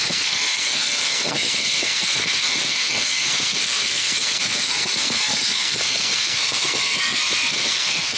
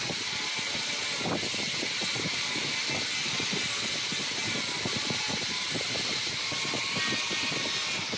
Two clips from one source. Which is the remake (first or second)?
first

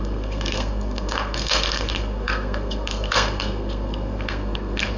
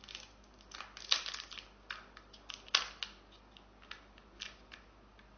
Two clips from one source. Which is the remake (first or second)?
first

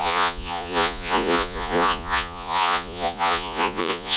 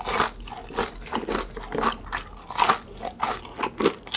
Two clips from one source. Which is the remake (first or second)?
first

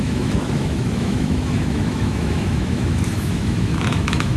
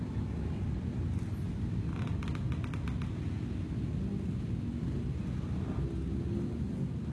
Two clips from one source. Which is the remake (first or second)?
first